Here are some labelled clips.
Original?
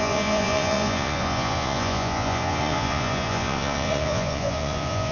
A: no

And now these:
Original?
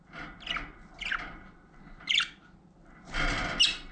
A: yes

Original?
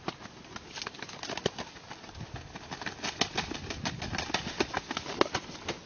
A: yes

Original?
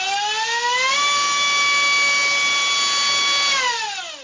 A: yes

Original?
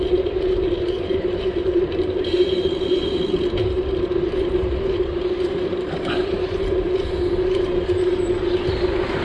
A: no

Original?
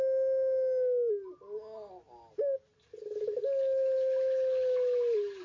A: yes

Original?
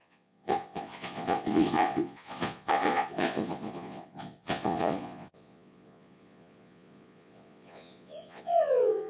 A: no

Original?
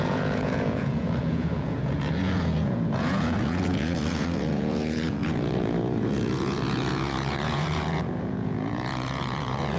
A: no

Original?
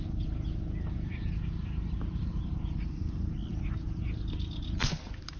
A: yes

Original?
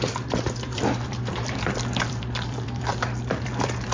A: no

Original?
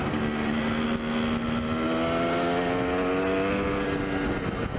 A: yes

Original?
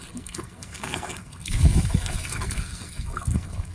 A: no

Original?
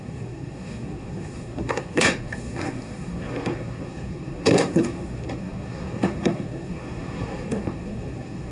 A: no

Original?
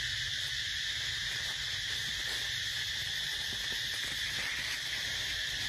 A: yes